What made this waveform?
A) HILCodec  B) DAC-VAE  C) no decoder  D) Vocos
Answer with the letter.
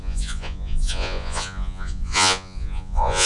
D